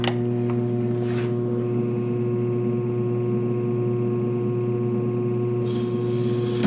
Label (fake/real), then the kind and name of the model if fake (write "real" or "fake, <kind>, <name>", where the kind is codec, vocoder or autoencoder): real